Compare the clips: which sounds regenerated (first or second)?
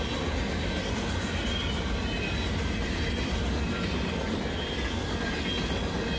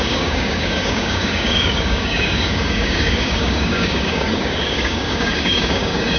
second